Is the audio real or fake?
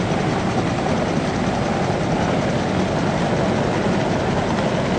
real